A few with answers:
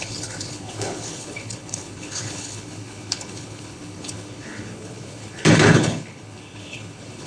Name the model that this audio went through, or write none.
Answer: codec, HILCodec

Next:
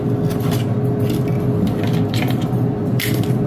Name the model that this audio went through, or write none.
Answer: none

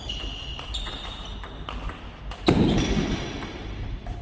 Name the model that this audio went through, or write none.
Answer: none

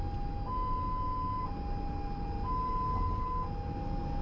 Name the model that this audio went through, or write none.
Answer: none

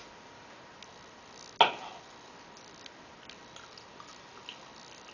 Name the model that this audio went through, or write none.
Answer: none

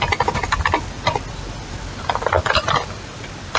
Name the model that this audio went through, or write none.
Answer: none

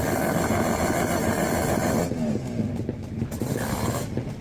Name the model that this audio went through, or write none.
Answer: none